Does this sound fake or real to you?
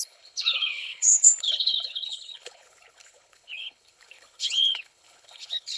fake